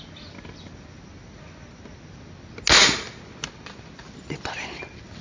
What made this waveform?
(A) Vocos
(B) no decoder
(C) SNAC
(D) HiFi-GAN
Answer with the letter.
B